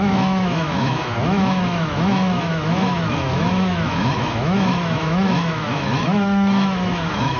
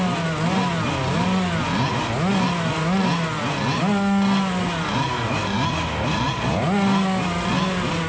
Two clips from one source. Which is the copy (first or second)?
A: first